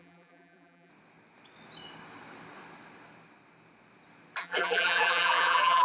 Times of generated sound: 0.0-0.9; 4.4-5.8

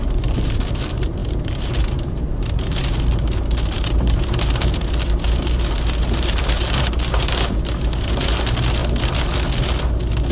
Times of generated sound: 0.0-8.8

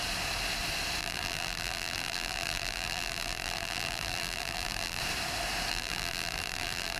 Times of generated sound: 1.0-5.0; 5.7-7.0

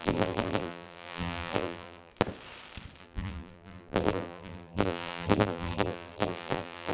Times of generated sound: 0.0-2.1; 3.0-6.9

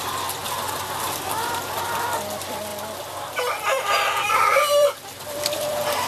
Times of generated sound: 2.7-6.1